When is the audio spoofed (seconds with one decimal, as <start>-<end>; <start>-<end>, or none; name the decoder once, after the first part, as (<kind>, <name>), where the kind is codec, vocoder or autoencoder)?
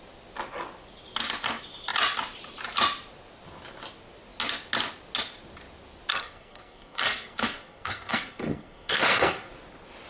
6.1-9.5 (codec, SNAC)